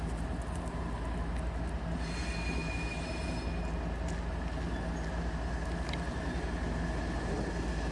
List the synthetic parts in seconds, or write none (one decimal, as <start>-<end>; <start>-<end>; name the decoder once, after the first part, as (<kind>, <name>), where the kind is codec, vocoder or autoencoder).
none